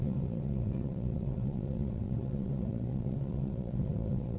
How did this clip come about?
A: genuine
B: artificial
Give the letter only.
B